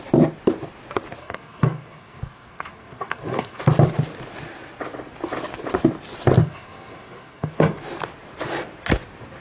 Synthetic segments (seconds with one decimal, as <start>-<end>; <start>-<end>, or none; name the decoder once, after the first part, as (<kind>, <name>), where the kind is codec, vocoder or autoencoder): 1.2-3.6 (codec, SNAC); 6.4-7.8